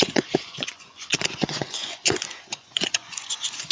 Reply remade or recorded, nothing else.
remade